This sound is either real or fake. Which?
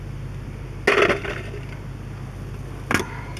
real